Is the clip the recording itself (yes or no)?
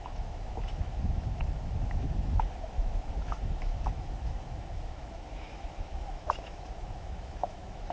no